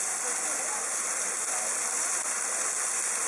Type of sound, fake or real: real